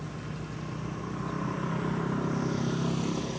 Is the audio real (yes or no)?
yes